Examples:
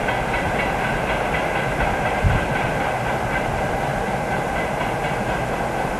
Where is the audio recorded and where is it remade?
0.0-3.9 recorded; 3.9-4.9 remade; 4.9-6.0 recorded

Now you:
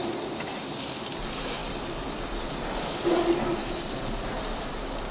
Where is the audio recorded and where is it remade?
0.0-0.5 remade; 0.5-1.2 recorded; 1.2-5.1 remade

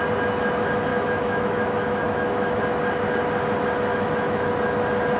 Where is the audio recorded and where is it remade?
0.0-0.9 recorded; 0.9-2.6 remade; 2.6-3.9 recorded; 3.9-4.5 remade; 4.5-5.2 recorded

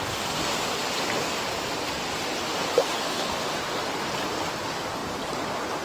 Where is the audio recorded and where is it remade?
0.0-2.8 recorded; 2.8-3.4 remade; 3.4-5.8 recorded

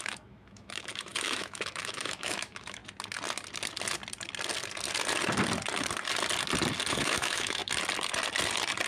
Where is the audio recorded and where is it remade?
0.0-2.8 remade; 2.8-6.9 recorded; 6.9-7.6 remade; 7.6-8.9 recorded

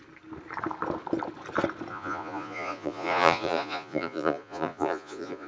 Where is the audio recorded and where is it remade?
0.0-1.9 recorded; 1.9-5.5 remade